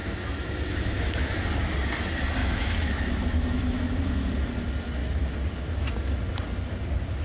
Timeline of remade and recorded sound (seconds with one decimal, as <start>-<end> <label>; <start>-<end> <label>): 0.0-1.4 remade; 1.4-2.4 recorded; 2.4-4.3 remade; 4.3-7.2 recorded